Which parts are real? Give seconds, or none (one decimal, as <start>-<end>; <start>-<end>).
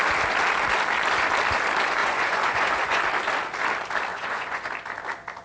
0.0-2.0; 3.0-4.1; 4.7-5.4